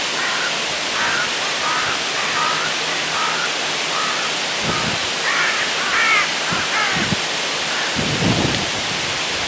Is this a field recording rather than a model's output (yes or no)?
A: yes